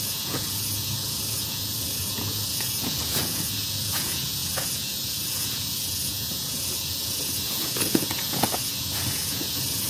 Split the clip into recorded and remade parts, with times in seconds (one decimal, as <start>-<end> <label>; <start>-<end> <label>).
0.0-9.9 remade